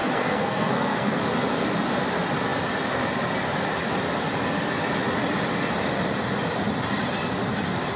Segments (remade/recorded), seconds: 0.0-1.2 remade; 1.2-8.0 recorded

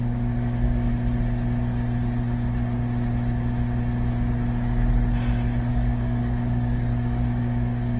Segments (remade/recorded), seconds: 0.0-0.9 remade; 0.9-5.7 recorded; 5.7-8.0 remade

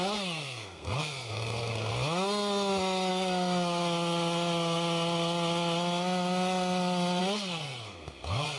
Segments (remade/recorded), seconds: 0.0-1.9 remade; 1.9-3.1 recorded; 3.1-3.8 remade; 3.8-7.2 recorded; 7.2-8.6 remade

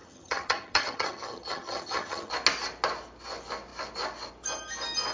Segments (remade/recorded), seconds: 0.0-2.3 remade; 2.3-5.1 recorded

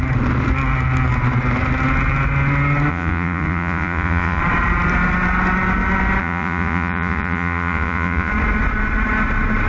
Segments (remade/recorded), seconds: 0.0-2.9 recorded; 2.9-4.4 remade; 4.4-6.2 recorded; 6.2-8.3 remade; 8.3-9.7 recorded

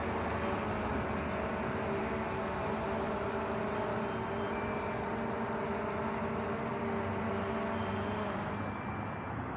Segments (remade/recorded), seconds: 0.0-9.6 recorded

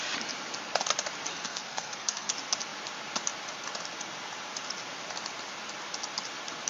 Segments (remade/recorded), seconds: 0.0-1.3 recorded; 1.3-2.3 remade; 2.3-6.7 recorded